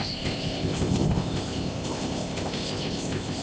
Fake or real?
fake